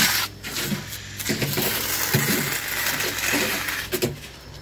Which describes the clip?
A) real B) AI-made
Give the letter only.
A